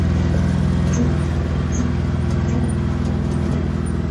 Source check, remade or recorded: recorded